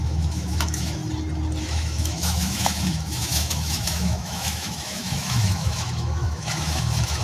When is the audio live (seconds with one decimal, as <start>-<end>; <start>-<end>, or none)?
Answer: 1.0-1.6